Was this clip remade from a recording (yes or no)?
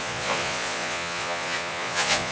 yes